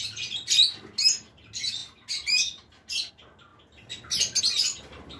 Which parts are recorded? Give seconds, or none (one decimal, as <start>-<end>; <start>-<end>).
0.0-5.2